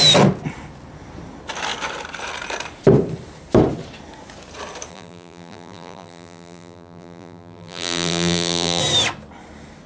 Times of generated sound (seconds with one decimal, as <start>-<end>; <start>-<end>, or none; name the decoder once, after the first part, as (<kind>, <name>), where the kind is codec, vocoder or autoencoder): 4.9-8.8 (vocoder, BigVGAN v2)